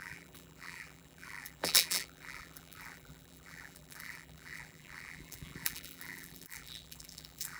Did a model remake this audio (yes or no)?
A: yes